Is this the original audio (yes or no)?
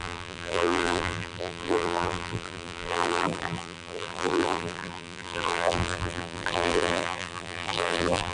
no